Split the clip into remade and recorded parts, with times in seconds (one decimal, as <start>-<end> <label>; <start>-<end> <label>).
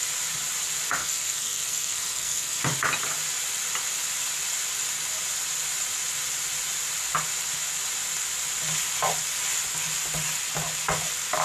0.0-1.0 recorded; 1.0-2.6 remade; 2.6-11.4 recorded